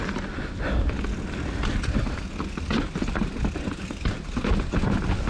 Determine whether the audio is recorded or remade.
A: recorded